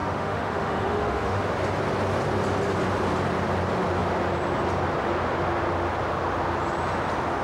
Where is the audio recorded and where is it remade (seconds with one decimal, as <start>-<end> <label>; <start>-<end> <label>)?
0.0-1.4 remade; 1.4-7.4 recorded